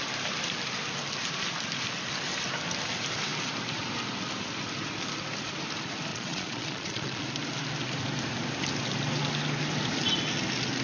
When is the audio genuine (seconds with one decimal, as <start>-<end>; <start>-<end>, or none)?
0.0-6.1; 7.2-10.8